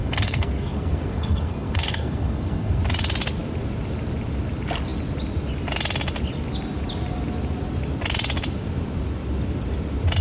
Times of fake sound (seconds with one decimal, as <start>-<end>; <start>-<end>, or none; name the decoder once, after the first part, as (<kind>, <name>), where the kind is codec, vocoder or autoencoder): 0.0-2.8 (codec, SNAC)